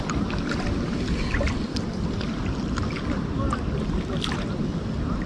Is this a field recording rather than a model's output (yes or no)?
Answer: yes